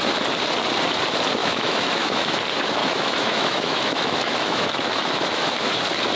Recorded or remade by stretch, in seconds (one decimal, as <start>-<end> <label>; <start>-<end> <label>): 0.0-1.4 recorded; 1.4-2.4 remade; 2.4-2.8 recorded; 2.8-5.8 remade; 5.8-6.2 recorded